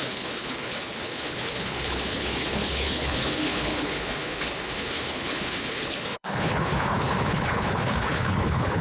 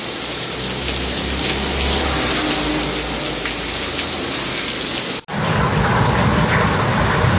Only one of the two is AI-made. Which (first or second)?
first